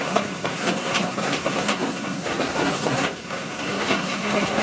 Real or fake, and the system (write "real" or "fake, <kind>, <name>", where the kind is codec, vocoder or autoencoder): fake, codec, SNAC